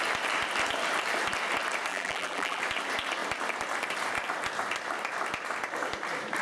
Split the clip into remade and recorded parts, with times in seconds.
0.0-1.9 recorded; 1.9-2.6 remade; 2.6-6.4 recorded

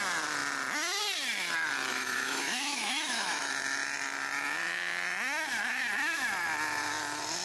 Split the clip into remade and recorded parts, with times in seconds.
0.0-1.9 recorded; 1.9-3.5 remade; 3.5-7.4 recorded

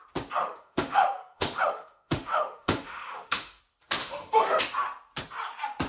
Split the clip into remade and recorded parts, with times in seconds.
0.0-0.4 recorded; 0.4-3.6 remade; 3.6-4.0 recorded; 4.0-4.6 remade; 4.6-5.9 recorded

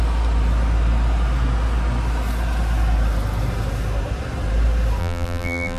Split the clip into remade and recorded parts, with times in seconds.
0.0-5.0 recorded; 5.0-5.8 remade